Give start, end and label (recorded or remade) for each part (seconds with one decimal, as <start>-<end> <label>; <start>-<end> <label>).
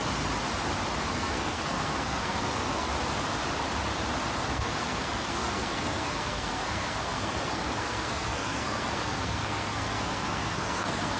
0.0-1.1 recorded; 1.1-2.9 remade; 2.9-4.5 recorded; 4.5-11.2 remade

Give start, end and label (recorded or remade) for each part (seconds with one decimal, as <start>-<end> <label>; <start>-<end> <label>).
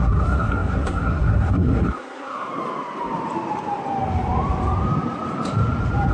0.0-2.5 remade; 2.5-6.1 recorded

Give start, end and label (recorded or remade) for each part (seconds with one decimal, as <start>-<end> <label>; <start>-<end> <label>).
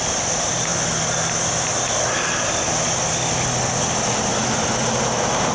0.0-5.5 recorded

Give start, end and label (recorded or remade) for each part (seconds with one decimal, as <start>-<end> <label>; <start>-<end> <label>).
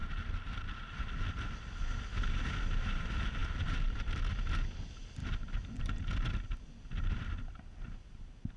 0.0-8.6 recorded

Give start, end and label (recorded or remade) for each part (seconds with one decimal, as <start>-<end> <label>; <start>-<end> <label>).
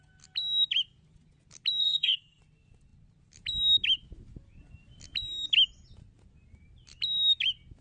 0.0-1.8 recorded; 1.8-2.4 remade; 2.4-7.8 recorded